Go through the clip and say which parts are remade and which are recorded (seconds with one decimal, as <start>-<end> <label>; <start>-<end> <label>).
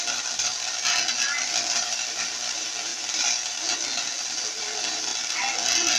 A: 0.0-0.5 remade; 0.5-1.4 recorded; 1.4-2.9 remade; 2.9-4.6 recorded; 4.6-5.1 remade; 5.1-6.0 recorded